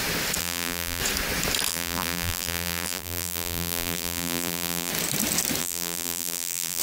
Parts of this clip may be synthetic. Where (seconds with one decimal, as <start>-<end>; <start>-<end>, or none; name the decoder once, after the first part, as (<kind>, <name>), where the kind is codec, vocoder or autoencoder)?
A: 0.4-1.0 (vocoder, BigVGAN v2); 1.7-4.9; 5.6-6.8